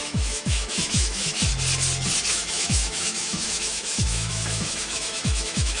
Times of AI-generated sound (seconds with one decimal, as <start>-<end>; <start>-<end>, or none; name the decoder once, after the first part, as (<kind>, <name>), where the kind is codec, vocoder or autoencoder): 0.0-1.5 (autoencoder, DAC-VAE); 2.3-5.8